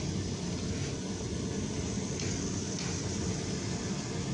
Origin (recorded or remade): recorded